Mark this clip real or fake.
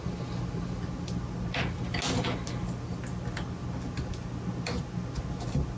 real